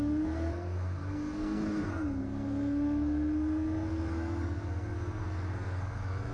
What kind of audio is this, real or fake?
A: fake